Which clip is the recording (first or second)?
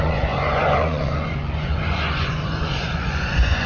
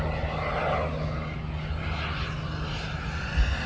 second